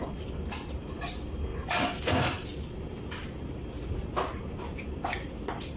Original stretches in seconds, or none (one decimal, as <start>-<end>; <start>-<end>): 0.0-5.8

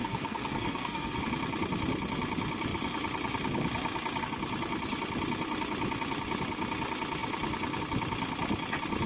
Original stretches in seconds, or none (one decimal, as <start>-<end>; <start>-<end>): 1.2-9.1